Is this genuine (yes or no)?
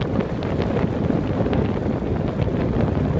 yes